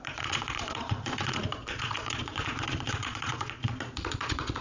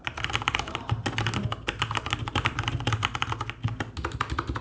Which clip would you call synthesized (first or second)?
first